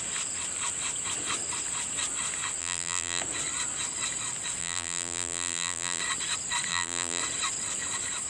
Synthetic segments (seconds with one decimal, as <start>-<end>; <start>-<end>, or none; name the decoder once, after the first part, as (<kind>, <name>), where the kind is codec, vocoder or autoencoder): 2.6-3.2 (vocoder, BigVGAN v2); 4.6-6.0; 6.7-7.2